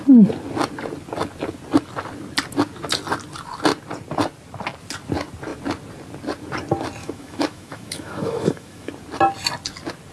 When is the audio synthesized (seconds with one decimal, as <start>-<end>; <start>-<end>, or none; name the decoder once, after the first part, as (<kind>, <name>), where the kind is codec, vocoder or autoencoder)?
7.0-8.9 (autoencoder, DAC-VAE)